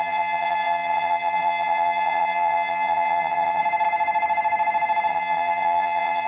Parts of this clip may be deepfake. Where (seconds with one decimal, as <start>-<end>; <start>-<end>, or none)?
0.0-3.6; 5.1-6.3